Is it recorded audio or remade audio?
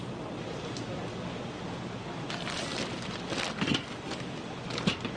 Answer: recorded